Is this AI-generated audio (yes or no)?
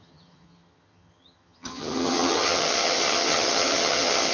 yes